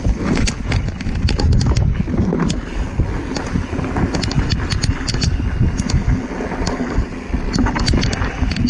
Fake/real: real